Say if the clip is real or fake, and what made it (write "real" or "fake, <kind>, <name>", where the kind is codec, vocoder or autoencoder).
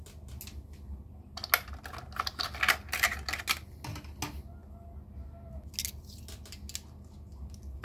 real